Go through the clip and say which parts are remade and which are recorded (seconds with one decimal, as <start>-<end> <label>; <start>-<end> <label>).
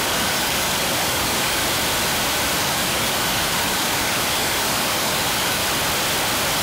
0.0-1.6 remade; 1.6-2.6 recorded; 2.6-5.6 remade; 5.6-6.6 recorded